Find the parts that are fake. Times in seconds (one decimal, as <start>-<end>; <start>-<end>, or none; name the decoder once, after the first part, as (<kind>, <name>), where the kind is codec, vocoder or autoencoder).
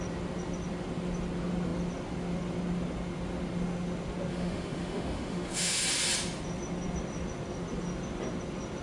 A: 4.3-5.8 (autoencoder, DAC-VAE)